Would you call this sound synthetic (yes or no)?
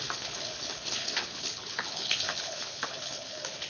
yes